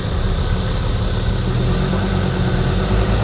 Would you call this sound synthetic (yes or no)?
no